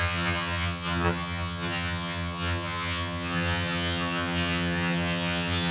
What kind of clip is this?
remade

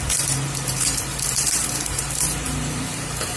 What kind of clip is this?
remade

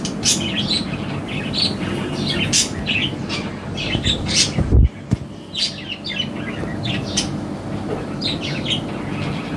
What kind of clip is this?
recorded